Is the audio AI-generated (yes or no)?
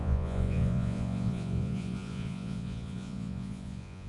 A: yes